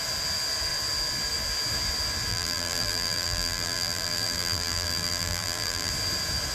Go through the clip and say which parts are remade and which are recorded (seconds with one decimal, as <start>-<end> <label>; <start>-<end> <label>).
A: 0.0-2.3 recorded; 2.3-5.9 remade; 5.9-6.5 recorded